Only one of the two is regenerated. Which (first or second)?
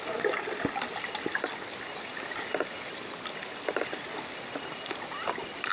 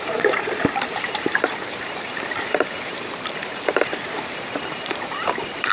second